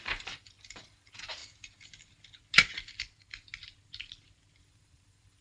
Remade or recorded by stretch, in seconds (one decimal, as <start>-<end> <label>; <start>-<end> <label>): 0.0-1.4 remade; 1.4-4.6 recorded; 4.6-5.4 remade